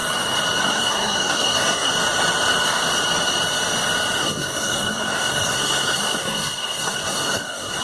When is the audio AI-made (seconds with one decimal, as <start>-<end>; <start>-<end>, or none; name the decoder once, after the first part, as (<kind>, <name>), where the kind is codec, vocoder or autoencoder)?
0.6-1.9 (codec, SNAC); 4.2-7.8